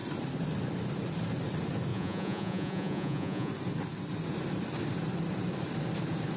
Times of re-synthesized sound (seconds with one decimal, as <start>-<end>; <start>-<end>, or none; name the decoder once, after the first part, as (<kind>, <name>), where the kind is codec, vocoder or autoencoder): 1.9-3.5 (vocoder, Vocos)